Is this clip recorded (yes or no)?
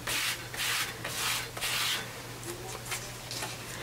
yes